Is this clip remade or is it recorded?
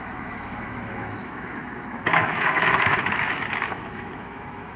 remade